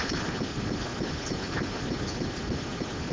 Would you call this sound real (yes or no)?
yes